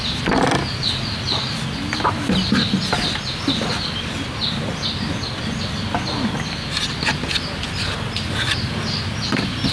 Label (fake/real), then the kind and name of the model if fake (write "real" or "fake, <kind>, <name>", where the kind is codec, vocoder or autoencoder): real